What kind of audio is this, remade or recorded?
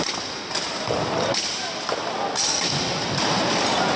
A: recorded